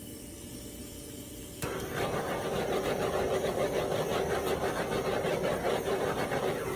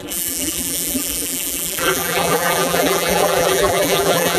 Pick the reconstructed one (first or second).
second